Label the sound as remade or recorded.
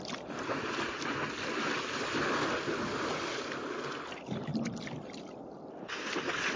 recorded